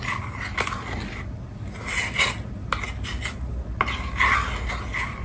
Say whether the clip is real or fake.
real